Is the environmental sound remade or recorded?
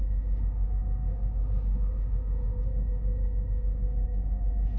remade